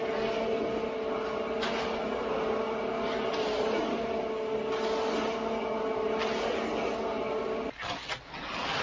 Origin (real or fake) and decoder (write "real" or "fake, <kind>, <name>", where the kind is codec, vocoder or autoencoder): real